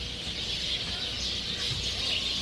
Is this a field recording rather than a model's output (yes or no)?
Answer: yes